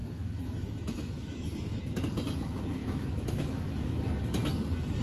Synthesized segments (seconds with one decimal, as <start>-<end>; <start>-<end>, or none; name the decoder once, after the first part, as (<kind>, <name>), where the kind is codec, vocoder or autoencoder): 0.0-2.0 (autoencoder, DAC-VAE); 2.8-4.0